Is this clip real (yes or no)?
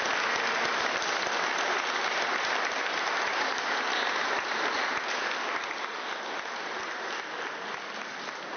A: yes